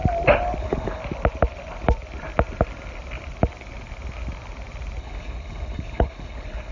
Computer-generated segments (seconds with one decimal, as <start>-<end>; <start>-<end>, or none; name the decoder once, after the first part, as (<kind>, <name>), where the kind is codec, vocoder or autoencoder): 0.6-1.0 (codec, HILCodec); 5.0-6.7

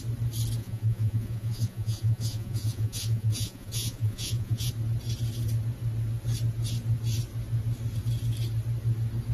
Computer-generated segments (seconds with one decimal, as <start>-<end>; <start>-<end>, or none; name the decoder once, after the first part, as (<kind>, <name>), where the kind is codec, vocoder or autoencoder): 0.6-4.7 (vocoder, Vocos)

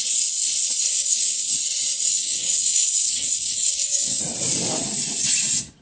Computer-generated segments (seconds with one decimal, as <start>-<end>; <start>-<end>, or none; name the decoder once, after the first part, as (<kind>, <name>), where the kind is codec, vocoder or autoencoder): 0.9-1.5 (codec, DAC); 2.1-4.2

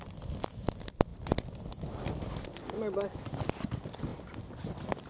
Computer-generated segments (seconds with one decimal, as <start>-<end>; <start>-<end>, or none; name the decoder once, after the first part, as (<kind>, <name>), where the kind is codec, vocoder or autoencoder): none

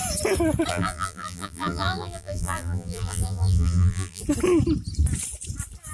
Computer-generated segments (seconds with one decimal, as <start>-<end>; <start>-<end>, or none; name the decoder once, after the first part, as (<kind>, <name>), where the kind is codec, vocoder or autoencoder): 0.7-4.2 (vocoder, BigVGAN v2)

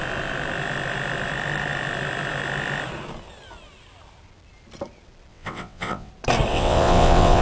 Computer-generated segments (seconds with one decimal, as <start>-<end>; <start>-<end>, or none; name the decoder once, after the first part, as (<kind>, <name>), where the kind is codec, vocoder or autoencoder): 5.3-6.1 (vocoder, WaveNeXt); 6.5-7.4

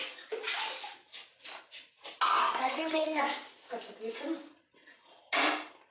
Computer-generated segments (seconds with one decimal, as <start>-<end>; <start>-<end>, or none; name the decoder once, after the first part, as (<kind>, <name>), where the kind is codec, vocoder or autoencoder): 2.4-3.2 (codec, SNAC)